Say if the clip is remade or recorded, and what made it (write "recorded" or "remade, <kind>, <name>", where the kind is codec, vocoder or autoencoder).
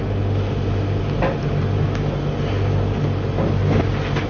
recorded